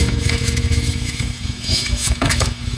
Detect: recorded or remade remade